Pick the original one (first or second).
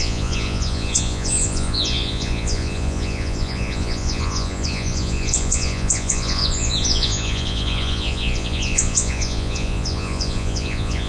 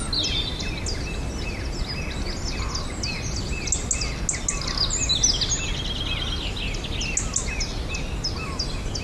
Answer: second